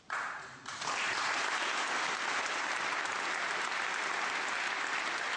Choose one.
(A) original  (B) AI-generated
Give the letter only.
A